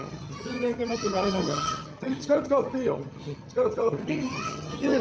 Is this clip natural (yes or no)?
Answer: no